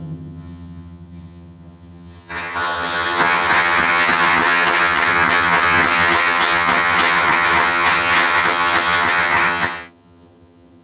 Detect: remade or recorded remade